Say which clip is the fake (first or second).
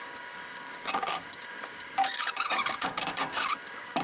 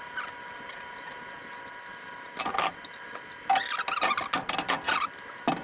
first